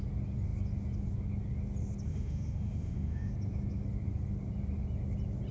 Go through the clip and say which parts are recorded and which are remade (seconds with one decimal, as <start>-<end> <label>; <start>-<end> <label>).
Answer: 0.0-2.1 recorded; 2.1-3.3 remade; 3.3-5.5 recorded